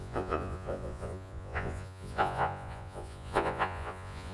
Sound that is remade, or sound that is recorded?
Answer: remade